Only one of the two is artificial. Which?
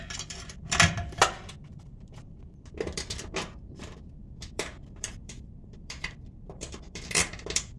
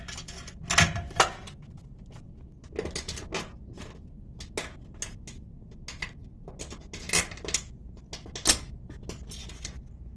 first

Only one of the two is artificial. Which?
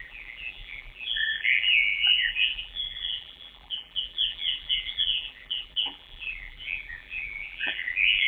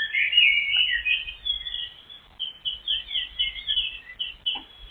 first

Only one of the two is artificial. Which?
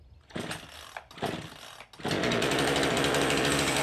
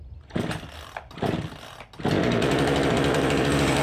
second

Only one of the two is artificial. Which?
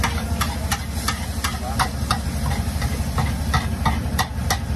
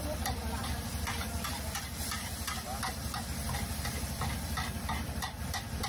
second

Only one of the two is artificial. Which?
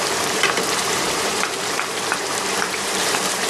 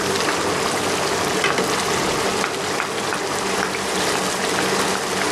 first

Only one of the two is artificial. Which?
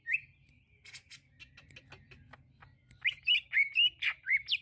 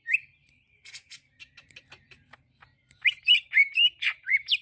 second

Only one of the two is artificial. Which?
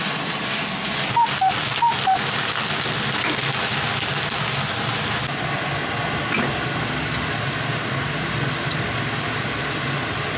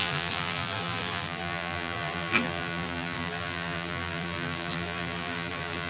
second